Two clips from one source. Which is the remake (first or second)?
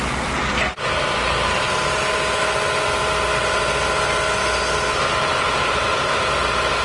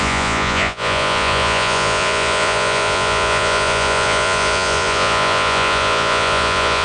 second